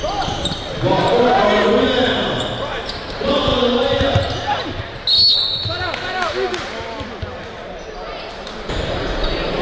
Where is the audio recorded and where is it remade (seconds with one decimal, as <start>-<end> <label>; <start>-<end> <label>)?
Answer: 0.0-3.5 remade; 3.5-8.3 recorded; 8.3-9.6 remade